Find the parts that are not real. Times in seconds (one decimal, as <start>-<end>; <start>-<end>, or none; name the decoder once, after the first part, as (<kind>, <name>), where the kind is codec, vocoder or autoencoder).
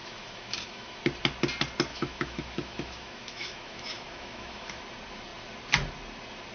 0.0-1.0 (autoencoder, DAC-VAE); 1.9-4.8